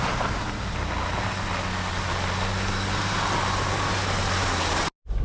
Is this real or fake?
real